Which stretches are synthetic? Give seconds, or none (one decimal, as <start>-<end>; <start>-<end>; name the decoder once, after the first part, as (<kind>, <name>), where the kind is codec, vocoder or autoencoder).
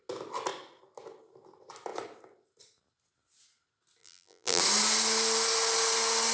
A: 4.0-4.6 (vocoder, BigVGAN v2)